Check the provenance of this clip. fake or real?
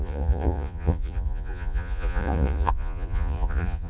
fake